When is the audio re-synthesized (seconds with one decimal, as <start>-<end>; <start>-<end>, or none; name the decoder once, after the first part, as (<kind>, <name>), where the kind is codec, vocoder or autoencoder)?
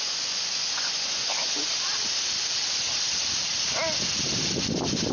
0.0-1.6 (vocoder, Vocos)